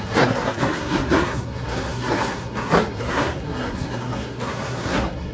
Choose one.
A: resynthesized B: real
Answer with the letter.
A